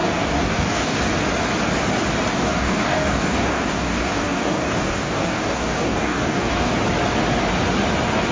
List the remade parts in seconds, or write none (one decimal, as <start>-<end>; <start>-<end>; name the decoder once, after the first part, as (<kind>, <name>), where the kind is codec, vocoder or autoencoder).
0.0-1.0 (codec, DAC); 2.3-6.7